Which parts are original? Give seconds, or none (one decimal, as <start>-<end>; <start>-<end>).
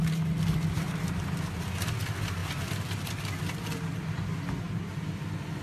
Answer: 0.0-2.4; 3.1-5.6